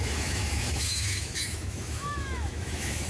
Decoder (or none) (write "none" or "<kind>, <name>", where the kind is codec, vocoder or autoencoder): autoencoder, DAC-VAE